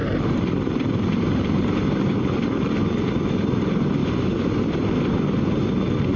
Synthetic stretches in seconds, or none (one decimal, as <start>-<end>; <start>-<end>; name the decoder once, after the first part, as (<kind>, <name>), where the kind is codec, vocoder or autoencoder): 0.0-3.1 (vocoder, BigVGAN v2); 4.0-5.6